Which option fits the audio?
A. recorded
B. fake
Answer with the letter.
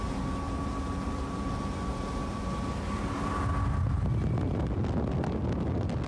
A